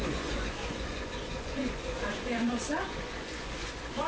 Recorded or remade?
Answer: remade